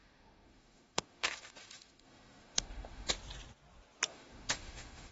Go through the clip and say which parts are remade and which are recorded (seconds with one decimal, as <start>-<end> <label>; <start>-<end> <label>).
0.0-3.1 remade; 3.1-4.1 recorded; 4.1-5.1 remade